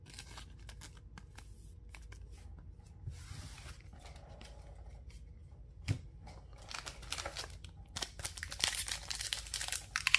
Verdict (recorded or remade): recorded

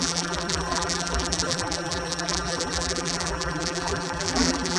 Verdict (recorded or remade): remade